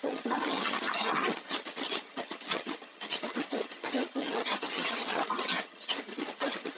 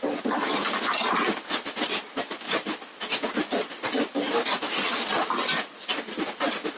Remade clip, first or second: first